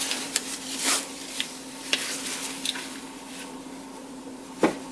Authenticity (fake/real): fake